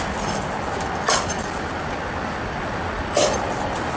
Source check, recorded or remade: recorded